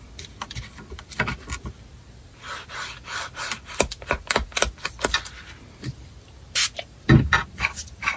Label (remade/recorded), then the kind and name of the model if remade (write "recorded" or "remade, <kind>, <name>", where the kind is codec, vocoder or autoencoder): recorded